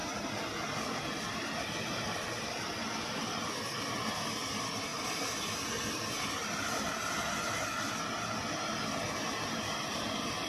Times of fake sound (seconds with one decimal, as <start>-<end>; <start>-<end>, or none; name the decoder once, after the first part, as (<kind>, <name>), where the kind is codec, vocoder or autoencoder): none